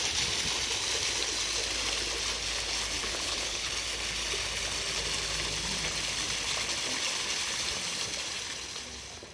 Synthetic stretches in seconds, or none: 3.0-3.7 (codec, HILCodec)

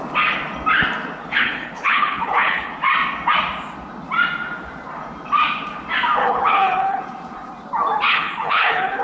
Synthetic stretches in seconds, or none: 1.2-2.7 (codec, HILCodec); 6.2-7.0; 8.1-9.0